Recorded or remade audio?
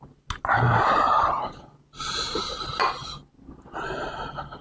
recorded